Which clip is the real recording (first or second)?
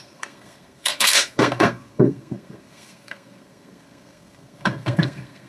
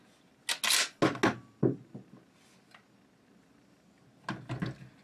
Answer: second